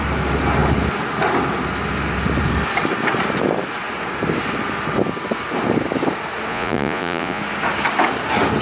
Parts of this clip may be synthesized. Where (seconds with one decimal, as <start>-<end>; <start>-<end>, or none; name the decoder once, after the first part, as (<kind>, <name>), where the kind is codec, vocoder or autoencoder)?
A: 6.5-7.4 (vocoder, Vocos)